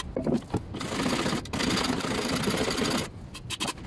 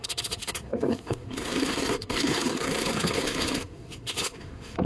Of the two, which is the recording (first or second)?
first